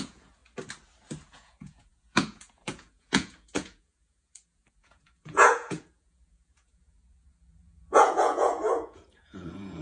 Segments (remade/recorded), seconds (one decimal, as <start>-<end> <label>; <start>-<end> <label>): 0.0-0.4 remade; 0.4-1.3 recorded; 1.3-9.8 remade